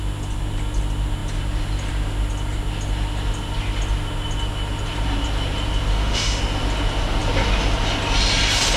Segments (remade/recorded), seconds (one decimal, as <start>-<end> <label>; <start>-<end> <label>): 0.0-5.9 recorded; 5.9-6.4 remade; 6.4-8.8 recorded